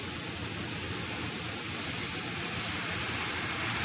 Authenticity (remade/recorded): recorded